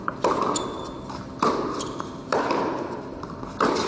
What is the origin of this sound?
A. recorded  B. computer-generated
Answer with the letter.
A